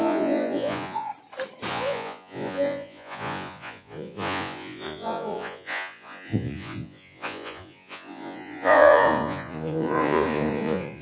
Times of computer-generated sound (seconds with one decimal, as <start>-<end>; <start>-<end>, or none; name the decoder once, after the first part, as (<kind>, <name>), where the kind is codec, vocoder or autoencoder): 0.0-1.1 (vocoder, Vocos); 1.7-11.0